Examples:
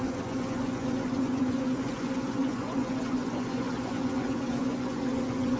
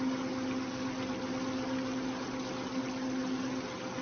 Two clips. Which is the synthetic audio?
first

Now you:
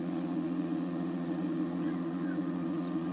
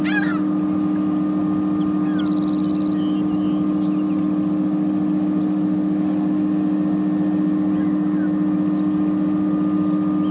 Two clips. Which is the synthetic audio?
first